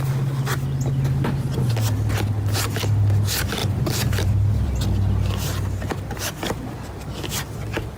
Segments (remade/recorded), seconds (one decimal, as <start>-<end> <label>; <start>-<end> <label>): 0.0-3.6 recorded; 3.6-4.7 remade; 4.7-8.0 recorded